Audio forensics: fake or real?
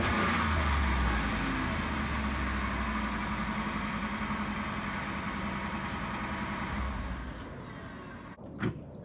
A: real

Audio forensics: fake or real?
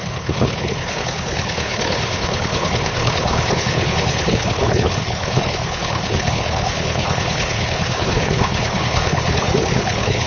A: fake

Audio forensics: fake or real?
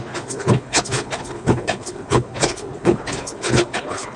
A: fake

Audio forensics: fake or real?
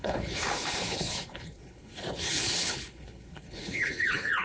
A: fake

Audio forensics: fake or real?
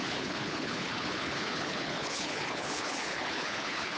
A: fake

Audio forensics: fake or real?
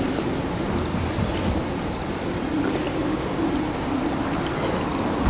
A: real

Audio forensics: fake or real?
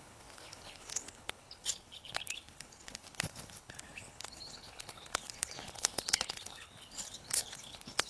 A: fake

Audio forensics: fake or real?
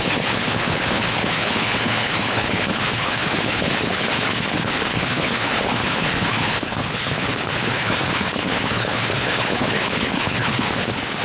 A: fake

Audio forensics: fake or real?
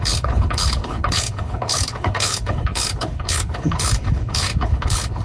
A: fake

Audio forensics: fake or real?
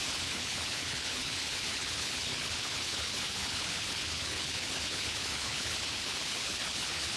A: fake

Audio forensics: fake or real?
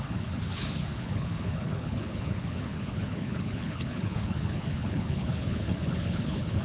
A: fake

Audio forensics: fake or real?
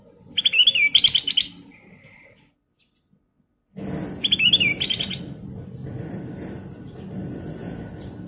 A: real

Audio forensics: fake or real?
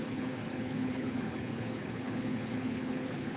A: fake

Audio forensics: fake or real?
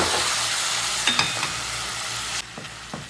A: real